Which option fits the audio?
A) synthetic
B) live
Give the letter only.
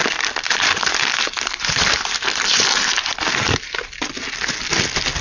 B